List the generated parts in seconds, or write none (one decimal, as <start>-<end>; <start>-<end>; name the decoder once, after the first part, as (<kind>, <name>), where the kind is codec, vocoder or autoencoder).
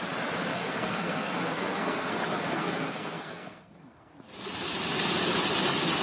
0.5-4.1 (codec, SNAC)